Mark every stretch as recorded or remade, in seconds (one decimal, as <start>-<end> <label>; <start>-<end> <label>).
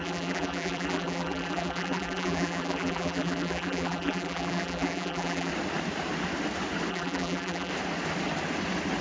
0.0-5.5 remade; 5.5-6.9 recorded; 6.9-7.7 remade; 7.7-9.0 recorded